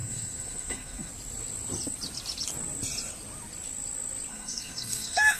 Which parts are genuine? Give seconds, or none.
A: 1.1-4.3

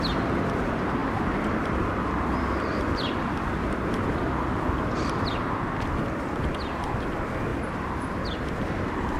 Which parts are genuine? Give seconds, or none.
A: 0.0-1.0; 4.6-7.5

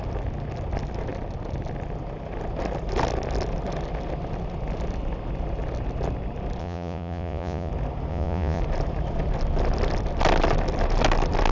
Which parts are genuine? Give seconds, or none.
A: 0.0-6.6; 7.7-8.1; 8.6-11.5